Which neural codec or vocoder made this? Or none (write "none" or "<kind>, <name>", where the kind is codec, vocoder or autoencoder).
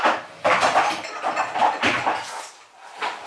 none